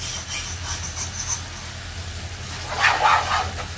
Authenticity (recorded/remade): recorded